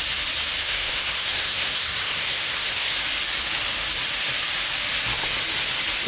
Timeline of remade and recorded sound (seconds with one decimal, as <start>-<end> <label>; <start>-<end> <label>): 0.0-0.6 recorded; 0.6-2.9 remade; 2.9-6.1 recorded